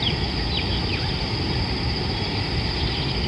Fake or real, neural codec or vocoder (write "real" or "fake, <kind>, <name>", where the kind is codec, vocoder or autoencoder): real